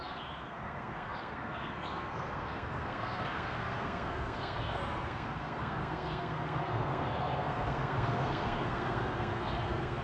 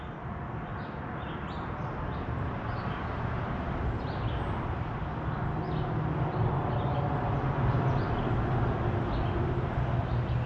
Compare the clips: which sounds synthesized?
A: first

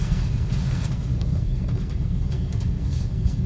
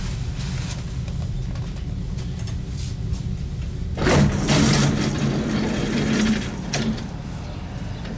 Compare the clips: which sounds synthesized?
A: first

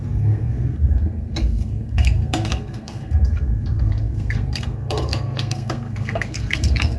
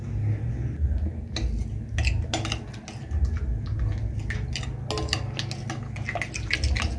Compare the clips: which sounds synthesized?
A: first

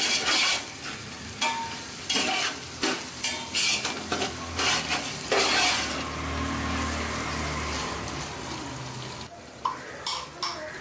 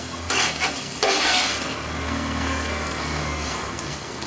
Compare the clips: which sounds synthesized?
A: second